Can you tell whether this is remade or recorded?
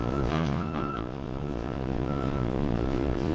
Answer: remade